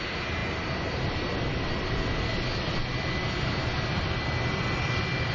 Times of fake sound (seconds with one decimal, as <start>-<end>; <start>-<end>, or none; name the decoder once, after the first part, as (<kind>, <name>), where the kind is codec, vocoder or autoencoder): none